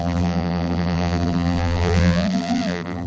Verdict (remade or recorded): remade